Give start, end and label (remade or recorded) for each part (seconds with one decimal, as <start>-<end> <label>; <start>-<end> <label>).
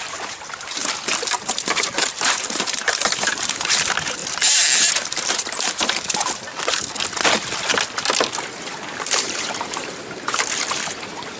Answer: 0.0-0.8 remade; 0.8-1.4 recorded; 1.4-4.2 remade; 4.2-4.9 recorded; 4.9-6.5 remade; 6.5-9.1 recorded; 9.1-11.4 remade